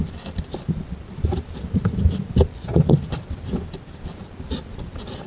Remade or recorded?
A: recorded